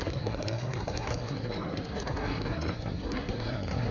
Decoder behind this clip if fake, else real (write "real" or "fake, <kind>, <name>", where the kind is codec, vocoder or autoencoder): fake, codec, SNAC